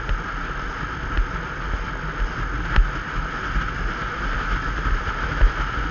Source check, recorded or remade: recorded